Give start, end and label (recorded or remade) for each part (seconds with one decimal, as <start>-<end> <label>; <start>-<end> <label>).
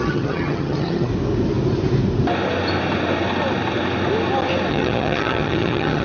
0.0-1.1 remade; 1.1-4.7 recorded; 4.7-6.0 remade